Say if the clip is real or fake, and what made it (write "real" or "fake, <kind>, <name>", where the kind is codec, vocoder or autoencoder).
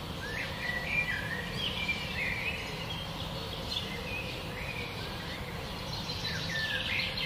fake, vocoder, BigVGAN v2